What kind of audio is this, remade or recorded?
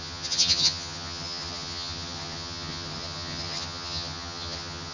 remade